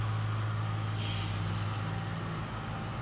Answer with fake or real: real